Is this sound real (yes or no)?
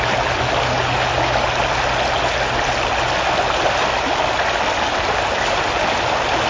yes